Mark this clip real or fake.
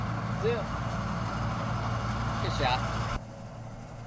real